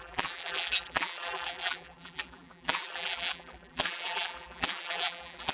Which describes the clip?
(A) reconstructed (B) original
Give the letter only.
A